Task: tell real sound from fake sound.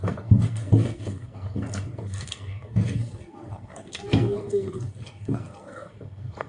fake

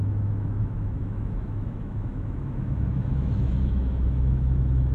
fake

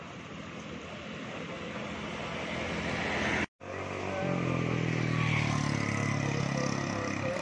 real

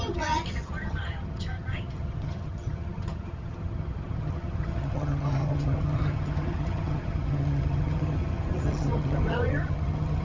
fake